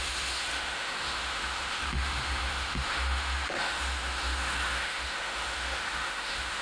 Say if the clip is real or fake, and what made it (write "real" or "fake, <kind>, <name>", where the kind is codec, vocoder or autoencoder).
fake, autoencoder, DAC-VAE